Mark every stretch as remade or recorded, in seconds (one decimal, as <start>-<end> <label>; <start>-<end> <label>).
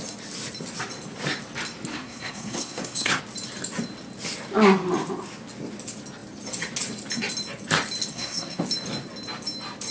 0.0-1.9 recorded; 1.9-3.2 remade; 3.2-8.1 recorded; 8.1-8.6 remade; 8.6-9.9 recorded